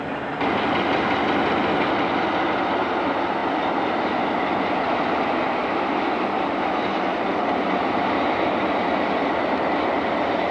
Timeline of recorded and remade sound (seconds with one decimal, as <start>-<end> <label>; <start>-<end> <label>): 0.0-10.5 recorded